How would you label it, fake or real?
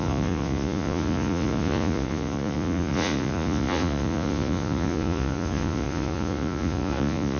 fake